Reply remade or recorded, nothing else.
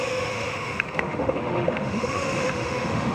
remade